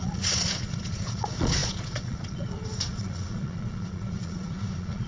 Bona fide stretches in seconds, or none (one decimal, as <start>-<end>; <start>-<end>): none